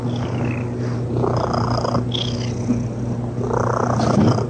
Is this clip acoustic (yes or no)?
yes